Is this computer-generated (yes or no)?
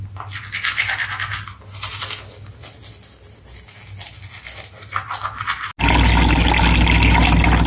no